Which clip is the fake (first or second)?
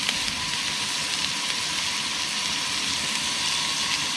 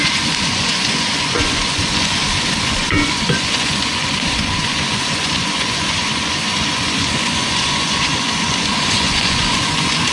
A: second